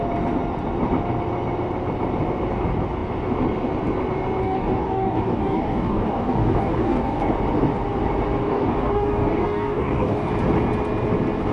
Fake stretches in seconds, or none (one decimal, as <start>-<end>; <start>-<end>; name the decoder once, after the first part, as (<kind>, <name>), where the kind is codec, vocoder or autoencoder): 4.4-7.3 (codec, DAC); 8.4-10.3